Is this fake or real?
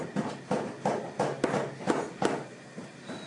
real